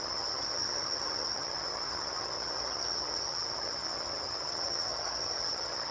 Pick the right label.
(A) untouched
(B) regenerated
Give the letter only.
B